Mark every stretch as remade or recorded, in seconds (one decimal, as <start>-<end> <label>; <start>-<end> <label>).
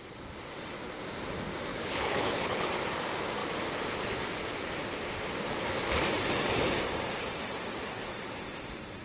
0.0-1.7 recorded; 1.7-2.7 remade; 2.7-9.0 recorded